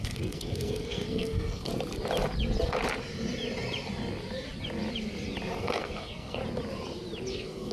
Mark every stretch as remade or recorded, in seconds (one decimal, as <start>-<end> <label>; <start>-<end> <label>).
0.0-1.7 remade; 1.7-5.6 recorded; 5.6-6.4 remade; 6.4-7.3 recorded; 7.3-7.7 remade

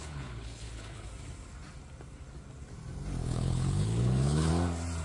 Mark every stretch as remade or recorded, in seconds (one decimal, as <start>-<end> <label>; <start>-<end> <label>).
0.0-1.1 remade; 1.1-3.2 recorded; 3.2-4.5 remade; 4.5-5.0 recorded

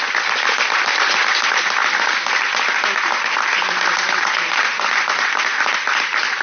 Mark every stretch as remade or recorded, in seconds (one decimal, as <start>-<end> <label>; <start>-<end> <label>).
0.0-6.4 recorded

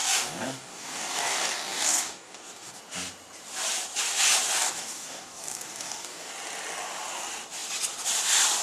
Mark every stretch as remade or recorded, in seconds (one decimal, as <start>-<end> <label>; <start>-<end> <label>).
0.0-2.8 remade; 2.8-4.6 recorded; 4.6-6.3 remade; 6.3-8.6 recorded